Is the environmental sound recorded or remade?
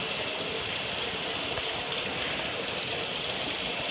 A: recorded